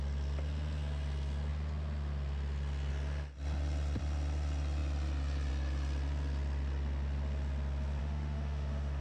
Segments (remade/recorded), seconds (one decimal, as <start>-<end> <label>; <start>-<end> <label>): 0.0-8.0 recorded; 8.0-9.0 remade